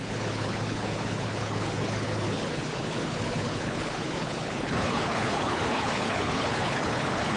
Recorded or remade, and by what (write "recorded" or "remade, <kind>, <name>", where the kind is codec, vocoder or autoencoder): remade, codec, HILCodec